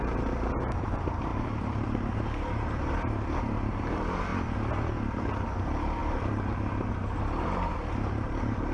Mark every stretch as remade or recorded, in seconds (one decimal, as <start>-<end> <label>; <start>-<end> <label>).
0.0-4.3 remade; 4.3-4.9 recorded; 4.9-8.7 remade